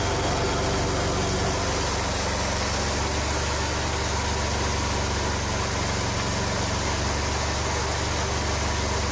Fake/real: real